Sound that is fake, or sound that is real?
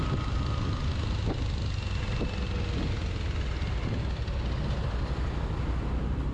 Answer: real